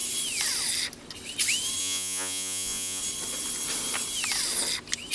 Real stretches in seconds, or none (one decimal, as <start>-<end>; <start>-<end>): 0.0-1.8; 3.0-5.1